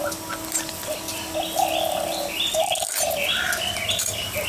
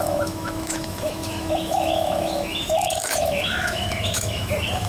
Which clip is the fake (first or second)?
second